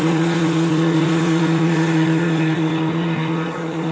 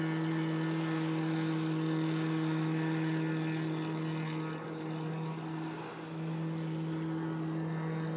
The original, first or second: second